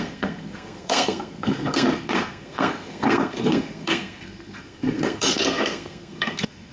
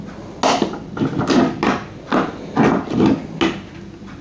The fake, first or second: first